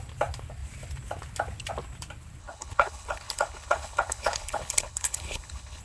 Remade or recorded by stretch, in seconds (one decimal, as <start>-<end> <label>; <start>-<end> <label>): 0.0-2.4 recorded; 2.4-5.8 remade